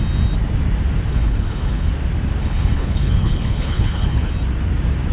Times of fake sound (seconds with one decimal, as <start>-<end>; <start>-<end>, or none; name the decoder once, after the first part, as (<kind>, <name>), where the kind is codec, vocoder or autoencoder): 1.1-1.9 (codec, HILCodec); 2.4-4.3